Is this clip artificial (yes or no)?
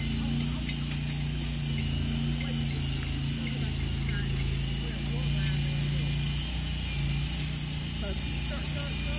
no